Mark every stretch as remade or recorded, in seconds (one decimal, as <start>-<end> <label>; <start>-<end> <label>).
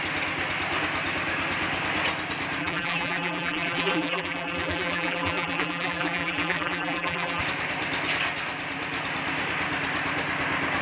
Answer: 0.0-2.6 recorded; 2.6-7.4 remade; 7.4-10.8 recorded